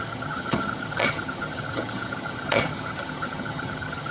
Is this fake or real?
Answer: fake